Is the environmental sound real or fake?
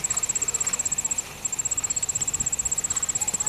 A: real